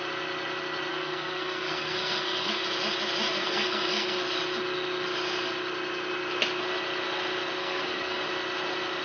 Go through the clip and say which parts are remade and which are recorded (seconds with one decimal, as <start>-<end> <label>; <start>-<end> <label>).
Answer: 0.0-0.9 recorded; 0.9-2.6 remade; 2.6-3.4 recorded; 3.4-4.2 remade; 4.2-7.6 recorded; 7.6-8.2 remade; 8.2-9.0 recorded